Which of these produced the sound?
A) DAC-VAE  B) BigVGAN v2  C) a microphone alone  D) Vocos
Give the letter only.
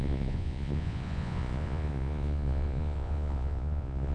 D